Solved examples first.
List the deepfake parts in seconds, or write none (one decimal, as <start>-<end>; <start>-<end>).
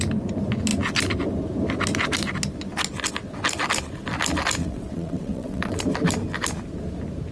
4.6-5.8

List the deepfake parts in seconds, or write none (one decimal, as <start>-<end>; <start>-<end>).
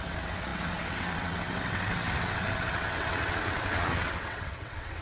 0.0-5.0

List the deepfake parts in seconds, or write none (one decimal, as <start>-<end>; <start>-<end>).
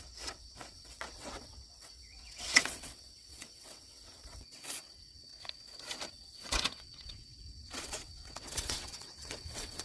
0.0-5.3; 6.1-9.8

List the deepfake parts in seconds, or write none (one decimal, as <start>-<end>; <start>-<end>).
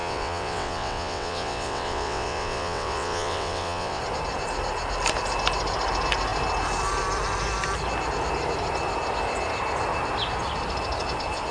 0.0-4.0